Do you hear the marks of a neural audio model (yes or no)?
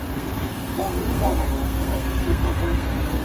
yes